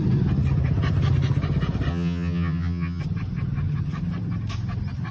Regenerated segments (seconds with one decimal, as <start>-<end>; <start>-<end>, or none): 1.9-3.0